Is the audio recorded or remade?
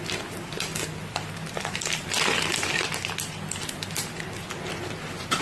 remade